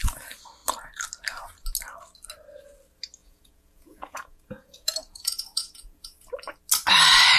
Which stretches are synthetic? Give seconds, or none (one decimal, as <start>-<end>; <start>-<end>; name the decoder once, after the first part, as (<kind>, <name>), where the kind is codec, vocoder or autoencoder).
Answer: 3.2-6.3 (vocoder, Vocos)